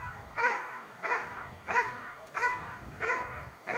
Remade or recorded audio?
remade